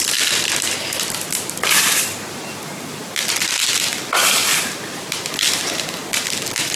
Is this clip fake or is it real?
real